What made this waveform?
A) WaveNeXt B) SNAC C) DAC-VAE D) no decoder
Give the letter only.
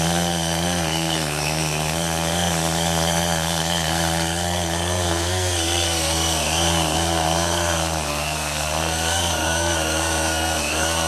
B